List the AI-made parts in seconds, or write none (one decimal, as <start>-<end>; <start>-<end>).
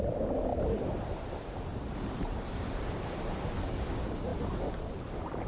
0.5-1.1; 1.7-3.2